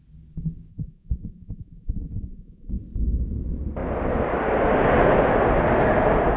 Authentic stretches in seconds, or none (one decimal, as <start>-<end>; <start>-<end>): 0.0-0.7; 2.7-6.4